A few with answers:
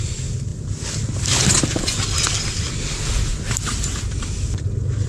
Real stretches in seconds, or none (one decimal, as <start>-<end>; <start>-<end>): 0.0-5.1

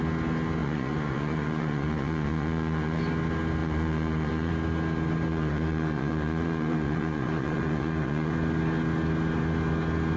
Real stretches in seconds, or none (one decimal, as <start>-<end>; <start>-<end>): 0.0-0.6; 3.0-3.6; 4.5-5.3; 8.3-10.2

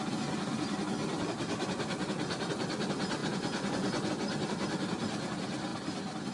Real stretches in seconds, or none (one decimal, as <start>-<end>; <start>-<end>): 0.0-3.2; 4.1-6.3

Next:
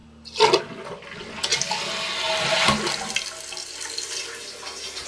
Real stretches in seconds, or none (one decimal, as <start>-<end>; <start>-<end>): 0.0-5.1

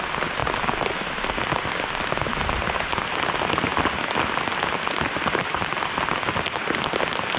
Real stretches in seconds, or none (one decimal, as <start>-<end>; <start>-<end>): 0.0-7.4

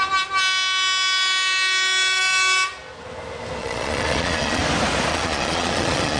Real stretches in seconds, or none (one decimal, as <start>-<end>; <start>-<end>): 0.0-3.6; 4.6-5.1